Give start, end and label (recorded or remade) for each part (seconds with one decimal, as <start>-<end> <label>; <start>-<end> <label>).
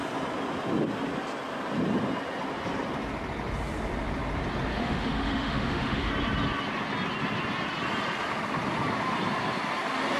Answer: 0.0-4.7 recorded; 4.7-6.1 remade; 6.1-10.2 recorded